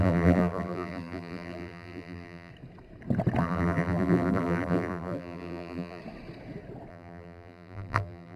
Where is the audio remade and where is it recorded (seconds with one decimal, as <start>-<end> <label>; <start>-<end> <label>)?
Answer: 0.0-2.5 remade; 2.5-3.4 recorded; 3.4-6.0 remade; 6.0-6.9 recorded; 6.9-8.4 remade